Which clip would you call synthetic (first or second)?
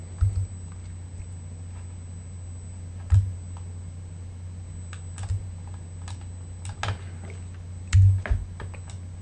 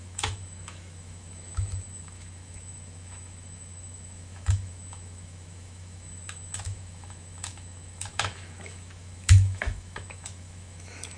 second